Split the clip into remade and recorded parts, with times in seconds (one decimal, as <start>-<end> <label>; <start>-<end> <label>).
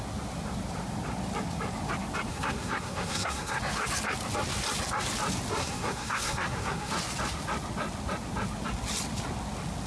0.0-2.3 recorded; 2.3-3.6 remade; 3.6-5.6 recorded; 5.6-6.9 remade; 6.9-9.9 recorded